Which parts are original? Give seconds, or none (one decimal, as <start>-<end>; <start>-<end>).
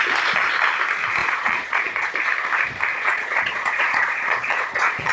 0.0-1.2; 2.1-2.9